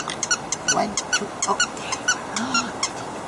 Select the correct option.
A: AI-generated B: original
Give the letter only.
B